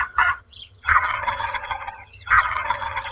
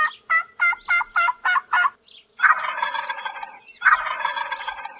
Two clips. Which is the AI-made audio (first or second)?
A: first